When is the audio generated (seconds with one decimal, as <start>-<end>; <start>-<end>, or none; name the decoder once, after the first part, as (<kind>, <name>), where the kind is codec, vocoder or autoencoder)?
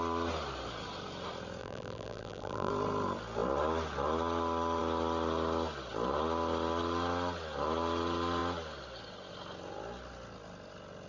1.6-2.7 (vocoder, BigVGAN v2)